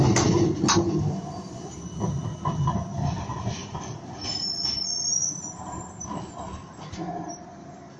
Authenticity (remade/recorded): recorded